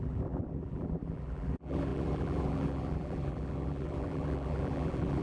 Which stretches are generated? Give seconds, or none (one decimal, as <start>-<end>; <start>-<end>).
0.0-5.2